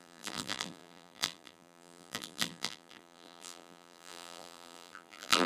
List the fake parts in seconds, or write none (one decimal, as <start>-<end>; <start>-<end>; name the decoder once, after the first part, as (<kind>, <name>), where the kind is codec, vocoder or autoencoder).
0.0-5.5 (vocoder, BigVGAN v2)